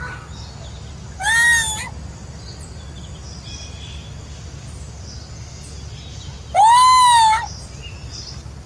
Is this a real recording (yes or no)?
yes